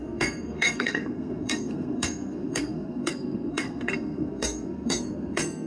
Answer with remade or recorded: remade